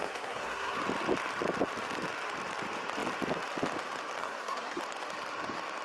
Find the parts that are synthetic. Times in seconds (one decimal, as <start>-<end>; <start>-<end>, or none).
0.0-0.8; 4.2-4.8